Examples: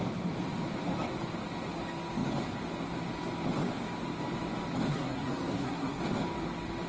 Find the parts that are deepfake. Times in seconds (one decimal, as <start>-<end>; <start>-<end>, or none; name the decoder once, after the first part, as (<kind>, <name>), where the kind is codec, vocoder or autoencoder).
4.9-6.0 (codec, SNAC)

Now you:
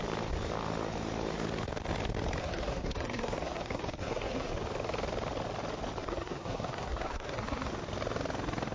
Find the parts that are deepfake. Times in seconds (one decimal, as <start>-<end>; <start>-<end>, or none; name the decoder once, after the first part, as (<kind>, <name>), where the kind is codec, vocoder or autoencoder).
2.4-4.5 (codec, SNAC); 6.0-7.7

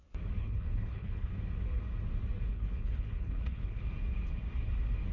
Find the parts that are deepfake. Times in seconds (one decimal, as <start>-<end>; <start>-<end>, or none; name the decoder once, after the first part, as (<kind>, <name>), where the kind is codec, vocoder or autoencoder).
0.4-1.3 (codec, HILCodec); 2.5-3.8

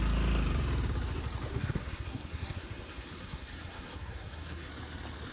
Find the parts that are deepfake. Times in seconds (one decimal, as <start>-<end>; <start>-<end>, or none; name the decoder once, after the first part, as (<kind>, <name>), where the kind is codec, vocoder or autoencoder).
1.5-4.7 (codec, SNAC)

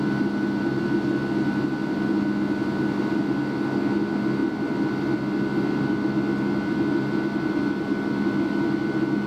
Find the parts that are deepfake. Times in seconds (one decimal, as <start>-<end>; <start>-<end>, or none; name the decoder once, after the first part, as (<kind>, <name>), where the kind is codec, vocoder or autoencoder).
none

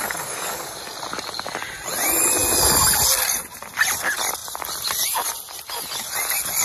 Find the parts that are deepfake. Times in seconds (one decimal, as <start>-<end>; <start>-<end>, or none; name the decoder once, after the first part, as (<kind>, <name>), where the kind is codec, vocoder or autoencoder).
0.0-0.8 (codec, DAC)

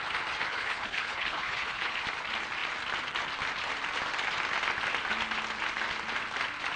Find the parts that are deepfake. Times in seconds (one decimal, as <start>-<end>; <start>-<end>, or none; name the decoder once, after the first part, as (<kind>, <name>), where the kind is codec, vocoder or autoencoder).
0.5-2.0 (codec, HILCodec)

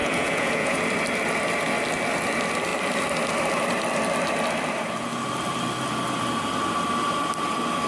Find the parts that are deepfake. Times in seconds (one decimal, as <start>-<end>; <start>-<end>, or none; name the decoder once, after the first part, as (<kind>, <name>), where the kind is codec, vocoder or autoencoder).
0.0-0.8 (vocoder, Vocos)